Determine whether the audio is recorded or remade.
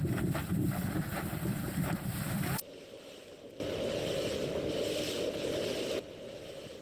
recorded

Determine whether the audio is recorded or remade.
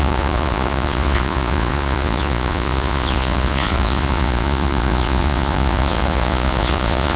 remade